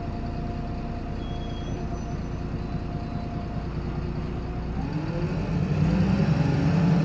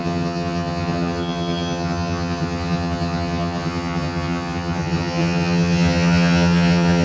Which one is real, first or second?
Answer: first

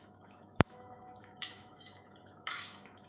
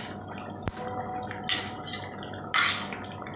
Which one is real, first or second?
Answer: second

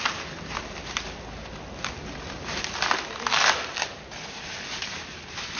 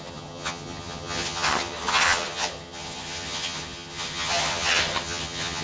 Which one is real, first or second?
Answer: first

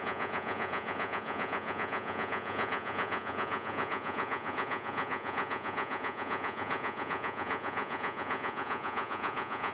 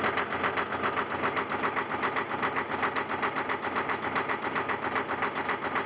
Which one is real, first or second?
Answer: second